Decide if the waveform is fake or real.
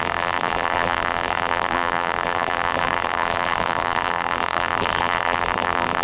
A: fake